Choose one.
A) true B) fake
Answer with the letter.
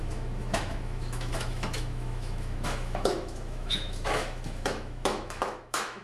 B